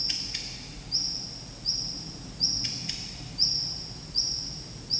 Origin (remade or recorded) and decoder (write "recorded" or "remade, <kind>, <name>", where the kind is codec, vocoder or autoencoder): recorded